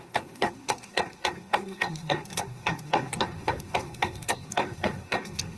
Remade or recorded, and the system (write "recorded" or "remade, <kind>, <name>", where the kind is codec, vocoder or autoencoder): remade, codec, SNAC